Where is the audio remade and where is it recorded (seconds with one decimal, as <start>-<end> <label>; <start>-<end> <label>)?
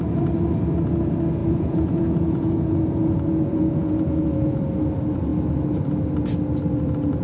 0.0-1.4 recorded; 1.4-4.6 remade; 4.6-7.2 recorded